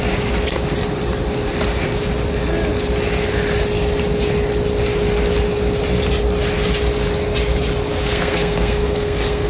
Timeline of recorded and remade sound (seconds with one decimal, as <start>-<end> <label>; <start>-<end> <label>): 0.0-7.9 recorded; 7.9-9.5 remade